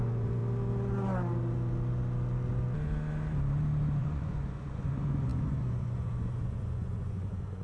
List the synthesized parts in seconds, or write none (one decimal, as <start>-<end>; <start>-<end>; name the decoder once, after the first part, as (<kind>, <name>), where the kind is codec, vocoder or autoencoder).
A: 0.0-0.4 (vocoder, Vocos); 4.0-7.6